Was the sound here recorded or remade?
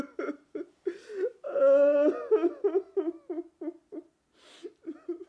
recorded